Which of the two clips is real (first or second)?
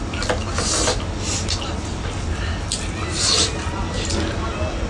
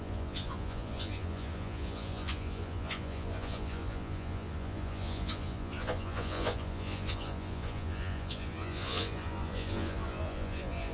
first